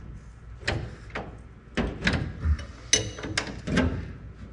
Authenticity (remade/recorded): recorded